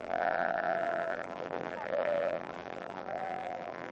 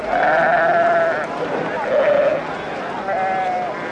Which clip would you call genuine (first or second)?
second